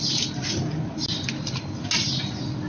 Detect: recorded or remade recorded